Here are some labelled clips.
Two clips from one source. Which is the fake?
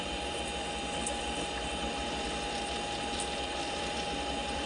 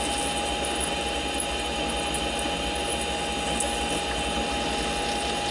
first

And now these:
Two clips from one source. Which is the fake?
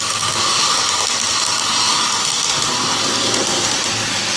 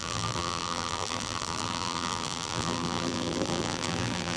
second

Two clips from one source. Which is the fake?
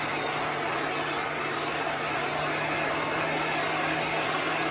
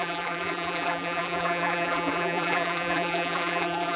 second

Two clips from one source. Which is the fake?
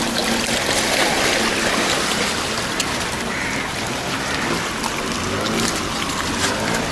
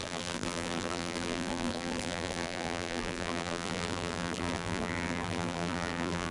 second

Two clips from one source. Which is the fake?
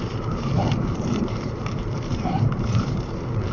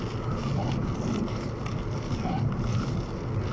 first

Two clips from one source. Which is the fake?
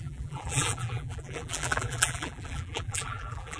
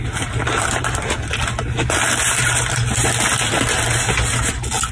first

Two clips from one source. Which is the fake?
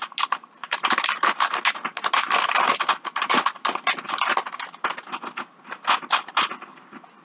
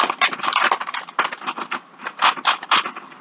second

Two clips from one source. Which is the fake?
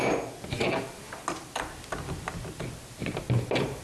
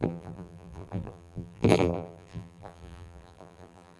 second